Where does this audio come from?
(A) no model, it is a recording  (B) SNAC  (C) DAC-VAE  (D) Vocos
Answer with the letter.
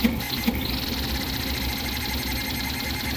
A